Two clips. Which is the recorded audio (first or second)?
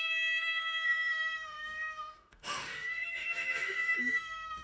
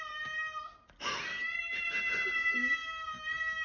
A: second